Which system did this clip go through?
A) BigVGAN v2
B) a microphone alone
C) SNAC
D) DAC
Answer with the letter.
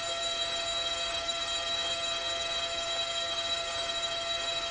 D